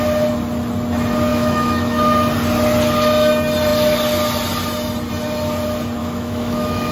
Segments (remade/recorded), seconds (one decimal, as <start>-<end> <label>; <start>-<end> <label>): 0.0-1.3 recorded; 1.3-2.3 remade; 2.3-6.0 recorded; 6.0-6.9 remade